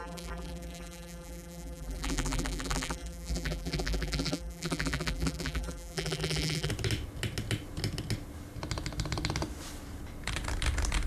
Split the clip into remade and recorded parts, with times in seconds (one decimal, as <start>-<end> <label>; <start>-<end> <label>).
0.0-6.7 remade; 6.7-11.1 recorded